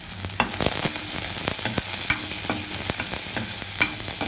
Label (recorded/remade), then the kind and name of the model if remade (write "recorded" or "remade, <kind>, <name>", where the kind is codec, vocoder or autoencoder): recorded